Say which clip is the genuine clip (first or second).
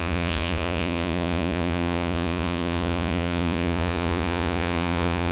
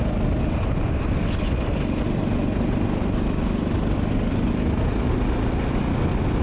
second